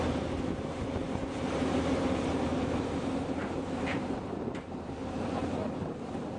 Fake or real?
fake